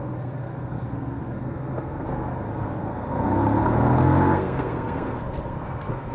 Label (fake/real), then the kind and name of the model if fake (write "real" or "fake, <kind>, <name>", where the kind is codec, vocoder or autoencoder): fake, codec, SNAC